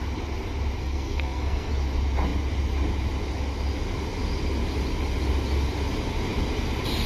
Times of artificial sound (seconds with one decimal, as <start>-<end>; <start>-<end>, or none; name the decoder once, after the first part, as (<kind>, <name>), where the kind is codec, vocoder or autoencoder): 0.8-1.7 (codec, SNAC)